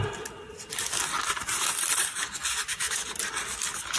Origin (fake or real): real